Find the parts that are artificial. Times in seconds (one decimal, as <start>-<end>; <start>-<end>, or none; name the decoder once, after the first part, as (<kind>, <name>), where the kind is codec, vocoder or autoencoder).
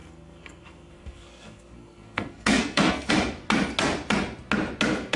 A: 0.0-3.1 (codec, SNAC)